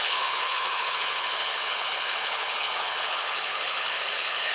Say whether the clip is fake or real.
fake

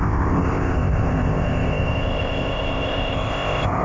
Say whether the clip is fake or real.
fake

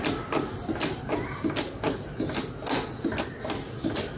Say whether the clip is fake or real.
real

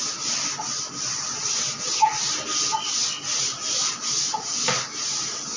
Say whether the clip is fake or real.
real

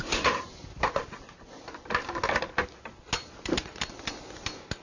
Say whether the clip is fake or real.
real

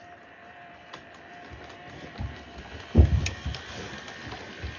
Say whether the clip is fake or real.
real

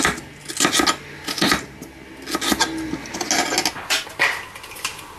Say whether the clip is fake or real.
real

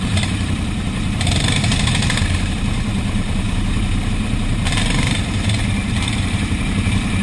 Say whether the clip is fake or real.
fake